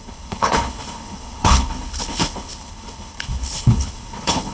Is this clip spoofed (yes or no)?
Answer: yes